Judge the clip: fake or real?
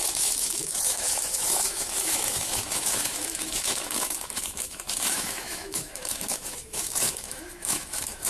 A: fake